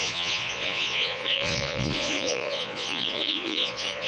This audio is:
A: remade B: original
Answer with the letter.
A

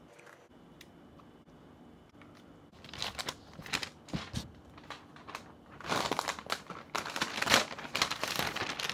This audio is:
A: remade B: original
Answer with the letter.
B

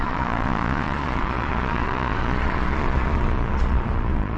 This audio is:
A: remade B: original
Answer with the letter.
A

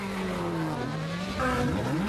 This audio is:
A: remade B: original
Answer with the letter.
B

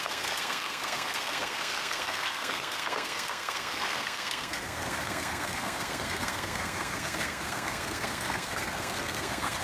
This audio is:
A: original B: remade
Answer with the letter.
B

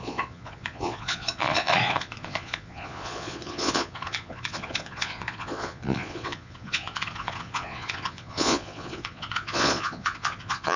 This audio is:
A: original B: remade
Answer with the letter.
B